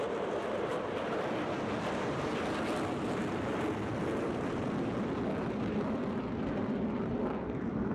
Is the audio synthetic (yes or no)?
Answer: yes